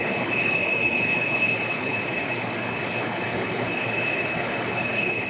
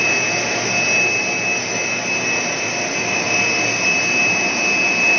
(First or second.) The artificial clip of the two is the first